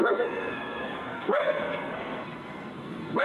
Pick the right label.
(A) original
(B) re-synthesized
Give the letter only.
B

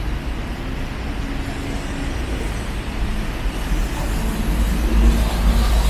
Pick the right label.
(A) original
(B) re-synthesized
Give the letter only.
A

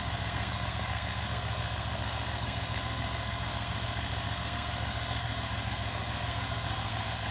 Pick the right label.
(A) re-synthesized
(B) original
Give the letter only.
A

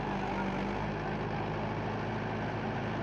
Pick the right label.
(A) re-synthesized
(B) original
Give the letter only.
B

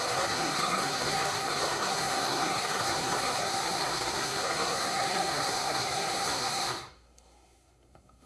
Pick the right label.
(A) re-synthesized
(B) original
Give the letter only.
A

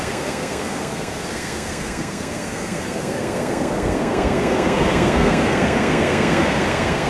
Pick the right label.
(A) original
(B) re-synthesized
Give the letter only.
B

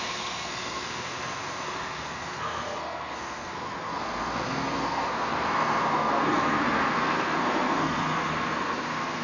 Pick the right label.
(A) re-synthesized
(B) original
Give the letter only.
A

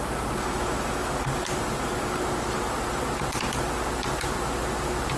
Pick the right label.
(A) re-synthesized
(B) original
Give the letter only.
B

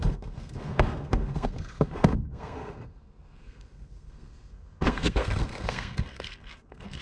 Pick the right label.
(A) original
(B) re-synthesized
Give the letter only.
B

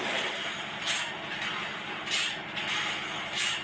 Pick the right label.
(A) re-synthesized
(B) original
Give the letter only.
B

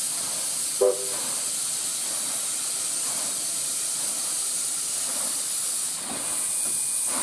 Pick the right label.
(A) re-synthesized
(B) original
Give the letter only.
B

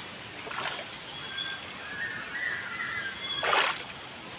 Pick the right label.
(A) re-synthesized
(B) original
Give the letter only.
B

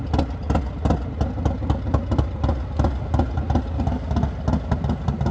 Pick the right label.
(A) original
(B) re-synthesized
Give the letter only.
A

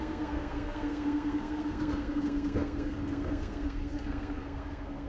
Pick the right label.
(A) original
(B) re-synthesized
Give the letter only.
B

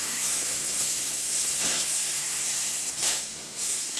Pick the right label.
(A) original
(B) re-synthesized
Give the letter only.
B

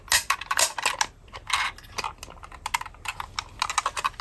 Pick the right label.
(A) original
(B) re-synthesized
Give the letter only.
A